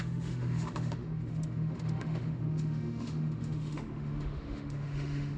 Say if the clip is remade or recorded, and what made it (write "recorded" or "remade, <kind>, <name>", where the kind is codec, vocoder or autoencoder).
remade, autoencoder, DAC-VAE